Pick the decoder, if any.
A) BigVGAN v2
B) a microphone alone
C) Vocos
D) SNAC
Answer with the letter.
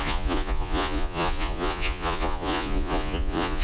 C